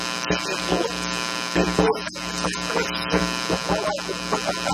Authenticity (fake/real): real